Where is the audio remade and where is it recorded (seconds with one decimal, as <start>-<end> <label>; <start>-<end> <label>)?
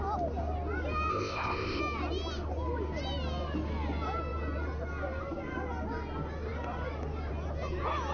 0.0-1.1 recorded; 1.1-1.8 remade; 1.8-8.1 recorded